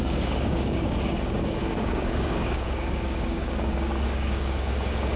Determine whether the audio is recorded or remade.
remade